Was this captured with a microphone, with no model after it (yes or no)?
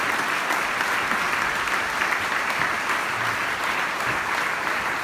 yes